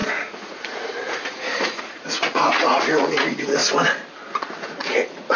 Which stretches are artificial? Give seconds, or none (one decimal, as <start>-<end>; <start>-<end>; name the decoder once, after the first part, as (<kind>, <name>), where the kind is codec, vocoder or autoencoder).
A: 0.0-3.6 (vocoder, Vocos); 4.3-5.4